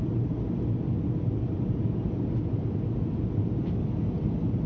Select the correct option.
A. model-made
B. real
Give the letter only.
B